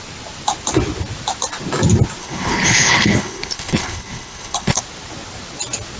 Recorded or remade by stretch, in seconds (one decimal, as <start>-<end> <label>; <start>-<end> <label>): 0.0-2.2 recorded; 2.2-4.8 remade; 4.8-6.0 recorded